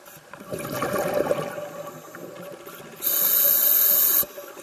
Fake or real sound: real